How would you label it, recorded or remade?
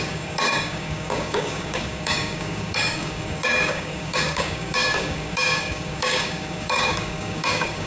remade